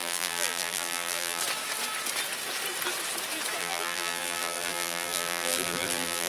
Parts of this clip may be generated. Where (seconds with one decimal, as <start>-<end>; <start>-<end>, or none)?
0.0-1.4; 3.6-6.3